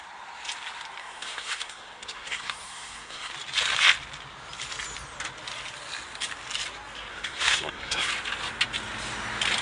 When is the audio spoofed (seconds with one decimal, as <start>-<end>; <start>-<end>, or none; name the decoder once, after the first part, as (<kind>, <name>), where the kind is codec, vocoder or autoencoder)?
1.0-3.3 (codec, SNAC); 7.1-8.1